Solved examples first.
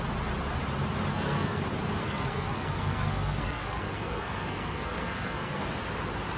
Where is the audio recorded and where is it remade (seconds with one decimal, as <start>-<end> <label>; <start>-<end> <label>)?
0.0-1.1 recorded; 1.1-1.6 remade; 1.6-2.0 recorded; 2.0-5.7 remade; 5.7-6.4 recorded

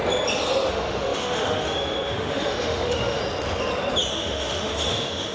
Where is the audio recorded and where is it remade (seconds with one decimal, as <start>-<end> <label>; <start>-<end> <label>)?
0.0-0.7 recorded; 0.7-3.2 remade; 3.2-4.1 recorded; 4.1-5.3 remade

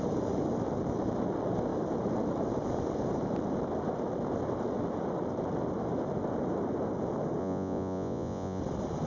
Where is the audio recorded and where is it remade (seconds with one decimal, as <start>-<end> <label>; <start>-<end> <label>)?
0.0-7.4 recorded; 7.4-8.6 remade; 8.6-9.1 recorded

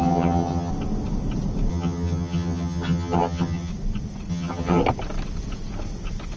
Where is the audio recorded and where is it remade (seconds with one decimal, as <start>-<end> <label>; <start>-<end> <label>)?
0.0-0.7 remade; 0.7-1.7 recorded; 1.7-3.7 remade; 3.7-4.3 recorded; 4.3-4.8 remade; 4.8-6.4 recorded

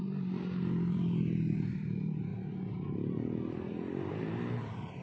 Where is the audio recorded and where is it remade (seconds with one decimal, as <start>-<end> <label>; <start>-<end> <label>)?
0.0-2.3 remade; 2.3-4.1 recorded; 4.1-5.0 remade

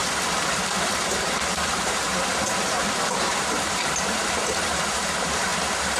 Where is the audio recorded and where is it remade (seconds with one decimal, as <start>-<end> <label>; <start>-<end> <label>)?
0.0-1.7 recorded; 1.7-5.5 remade; 5.5-6.0 recorded